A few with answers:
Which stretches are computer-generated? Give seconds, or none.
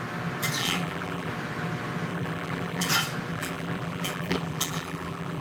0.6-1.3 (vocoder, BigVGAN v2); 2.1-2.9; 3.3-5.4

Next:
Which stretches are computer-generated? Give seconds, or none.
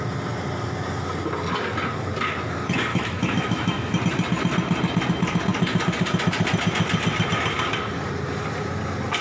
2.9-4.0 (autoencoder, DAC-VAE)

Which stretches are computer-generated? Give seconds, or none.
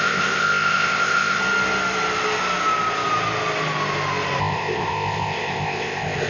0.0-1.4 (codec, ZipCodec); 4.4-6.3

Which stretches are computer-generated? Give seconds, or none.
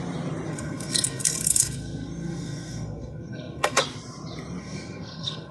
0.5-3.8 (codec, SNAC); 4.6-5.5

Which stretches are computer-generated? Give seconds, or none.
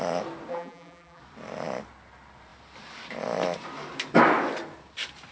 0.5-1.2 (vocoder, BigVGAN v2)